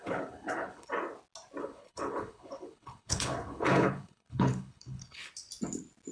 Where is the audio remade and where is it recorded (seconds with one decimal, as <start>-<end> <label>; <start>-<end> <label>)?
0.0-0.9 remade; 0.9-1.6 recorded; 1.6-5.3 remade; 5.3-6.1 recorded